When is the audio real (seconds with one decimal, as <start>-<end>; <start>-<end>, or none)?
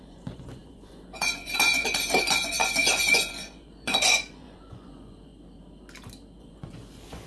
5.3-6.4